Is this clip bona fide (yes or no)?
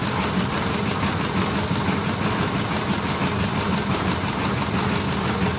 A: yes